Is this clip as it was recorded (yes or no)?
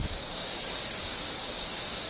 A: no